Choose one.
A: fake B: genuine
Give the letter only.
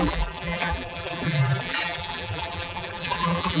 A